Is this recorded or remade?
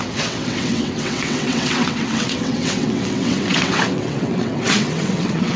remade